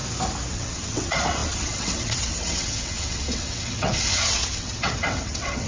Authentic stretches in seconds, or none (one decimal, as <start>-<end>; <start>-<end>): 0.0-0.5